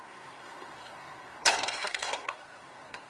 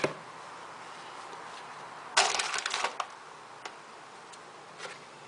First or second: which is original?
second